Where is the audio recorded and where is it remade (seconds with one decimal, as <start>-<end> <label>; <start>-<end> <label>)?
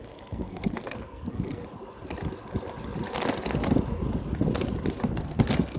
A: 0.0-1.6 remade; 1.6-5.1 recorded; 5.1-5.8 remade